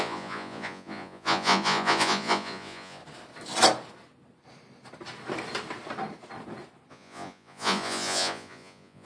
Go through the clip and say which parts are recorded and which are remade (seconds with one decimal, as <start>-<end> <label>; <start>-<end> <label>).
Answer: 0.0-3.0 remade; 3.0-6.9 recorded; 6.9-9.0 remade